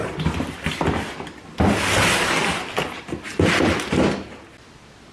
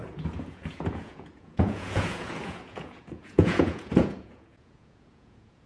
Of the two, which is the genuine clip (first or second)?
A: first